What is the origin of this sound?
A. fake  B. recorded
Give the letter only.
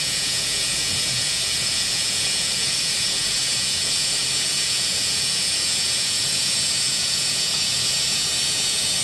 A